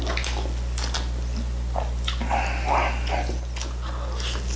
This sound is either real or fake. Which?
real